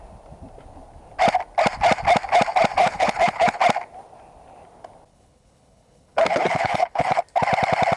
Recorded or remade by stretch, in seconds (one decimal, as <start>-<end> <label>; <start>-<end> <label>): 0.0-2.8 recorded; 2.8-3.6 remade; 3.6-5.1 recorded; 5.1-7.2 remade; 7.2-8.0 recorded